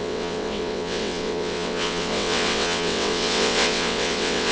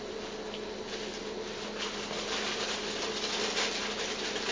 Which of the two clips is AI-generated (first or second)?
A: first